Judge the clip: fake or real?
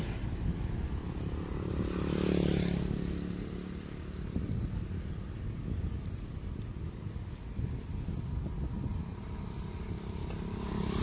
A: real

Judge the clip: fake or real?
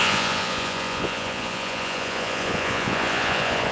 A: fake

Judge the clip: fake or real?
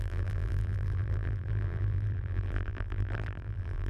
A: fake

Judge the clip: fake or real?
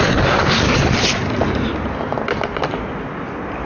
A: real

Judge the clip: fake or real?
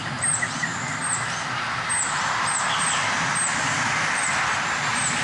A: real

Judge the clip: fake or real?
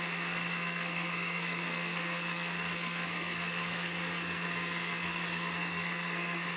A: fake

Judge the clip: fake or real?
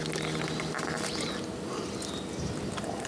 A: real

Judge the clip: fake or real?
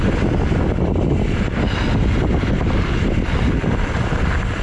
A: real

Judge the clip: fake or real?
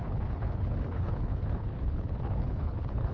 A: fake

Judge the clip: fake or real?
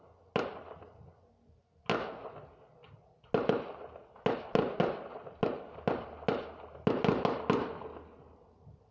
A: real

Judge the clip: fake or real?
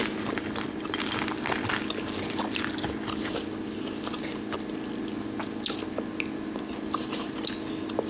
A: real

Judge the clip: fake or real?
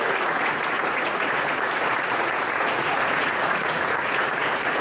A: fake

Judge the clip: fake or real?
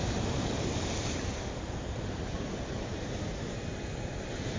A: real